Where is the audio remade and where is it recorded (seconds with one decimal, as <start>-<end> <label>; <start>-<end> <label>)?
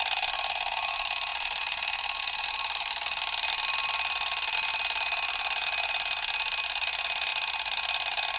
0.0-8.4 recorded